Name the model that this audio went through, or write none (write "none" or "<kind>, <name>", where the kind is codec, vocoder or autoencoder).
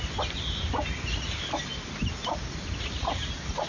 none